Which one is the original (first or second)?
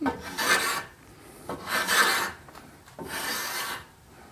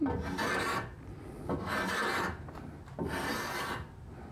second